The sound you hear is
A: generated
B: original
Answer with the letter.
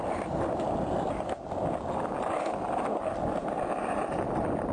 B